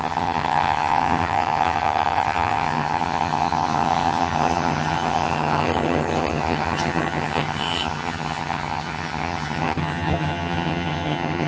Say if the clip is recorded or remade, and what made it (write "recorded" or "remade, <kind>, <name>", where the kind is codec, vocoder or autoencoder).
remade, vocoder, HiFi-GAN